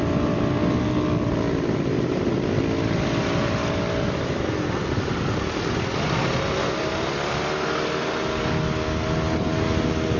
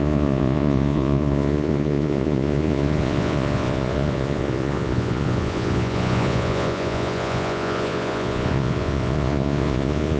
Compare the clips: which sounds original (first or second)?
first